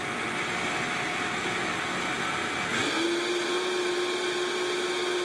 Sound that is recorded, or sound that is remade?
recorded